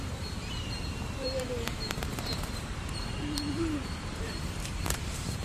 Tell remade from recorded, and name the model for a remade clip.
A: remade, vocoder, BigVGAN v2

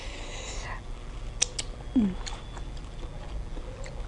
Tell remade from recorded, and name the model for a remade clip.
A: recorded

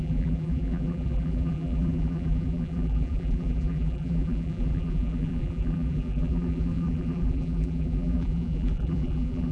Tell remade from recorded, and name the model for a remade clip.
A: remade, vocoder, BigVGAN v2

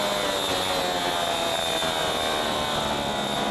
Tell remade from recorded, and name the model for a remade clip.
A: recorded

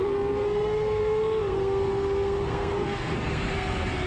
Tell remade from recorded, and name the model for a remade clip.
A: remade, codec, SNAC